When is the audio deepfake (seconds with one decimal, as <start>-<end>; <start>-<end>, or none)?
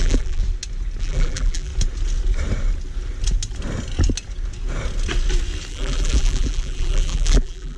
0.0-0.4; 1.0-1.7; 5.7-7.8